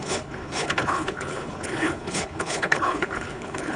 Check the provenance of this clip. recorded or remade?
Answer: remade